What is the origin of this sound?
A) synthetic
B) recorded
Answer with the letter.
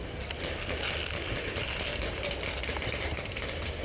B